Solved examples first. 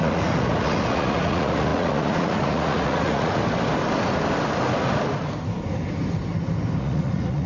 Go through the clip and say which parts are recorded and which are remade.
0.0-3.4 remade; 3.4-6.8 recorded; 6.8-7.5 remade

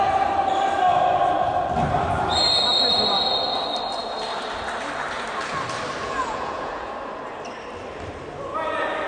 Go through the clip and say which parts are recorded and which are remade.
0.0-6.0 recorded; 6.0-6.9 remade; 6.9-9.1 recorded

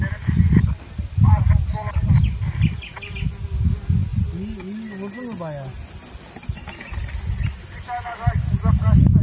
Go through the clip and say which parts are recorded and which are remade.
0.0-9.2 recorded

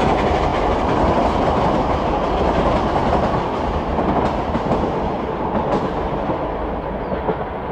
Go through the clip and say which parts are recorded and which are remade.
0.0-7.7 recorded

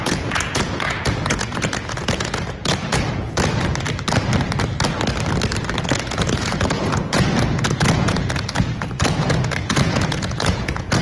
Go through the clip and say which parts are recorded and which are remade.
0.0-3.7 remade; 3.7-5.8 recorded; 5.8-11.0 remade